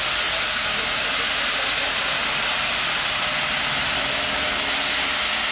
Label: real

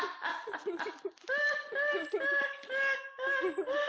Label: real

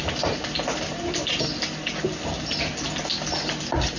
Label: real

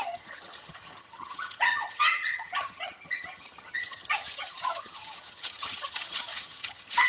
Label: fake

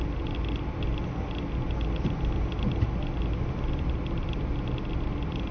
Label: real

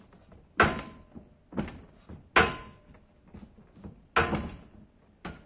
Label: real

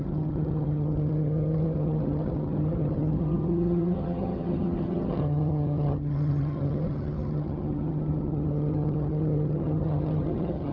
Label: fake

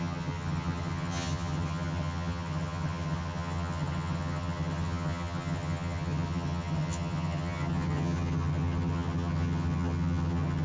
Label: fake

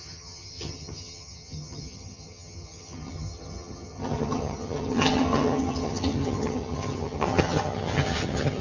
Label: fake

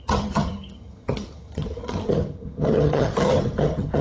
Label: fake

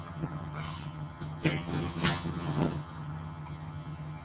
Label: fake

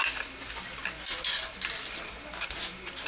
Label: real